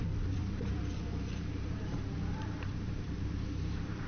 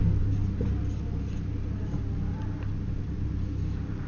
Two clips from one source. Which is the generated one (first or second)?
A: first